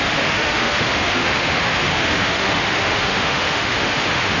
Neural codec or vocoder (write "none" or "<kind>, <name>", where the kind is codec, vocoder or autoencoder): autoencoder, DAC-VAE